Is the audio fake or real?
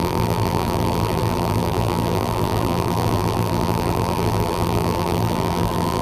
fake